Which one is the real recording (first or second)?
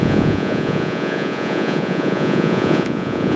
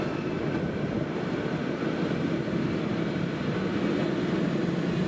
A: second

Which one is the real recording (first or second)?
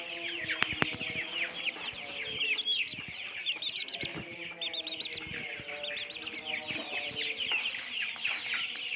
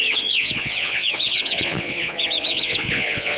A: first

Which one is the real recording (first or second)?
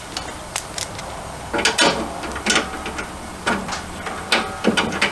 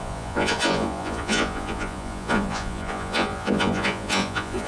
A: first